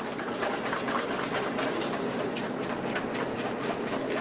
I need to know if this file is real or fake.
real